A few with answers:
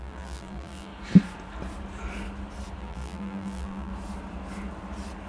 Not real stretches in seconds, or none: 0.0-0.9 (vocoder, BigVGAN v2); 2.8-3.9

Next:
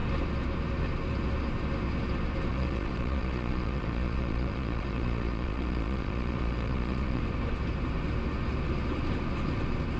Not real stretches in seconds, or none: 2.5-7.2 (vocoder, Vocos)

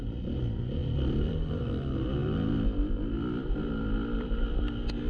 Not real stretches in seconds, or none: 0.8-1.6 (vocoder, BigVGAN v2)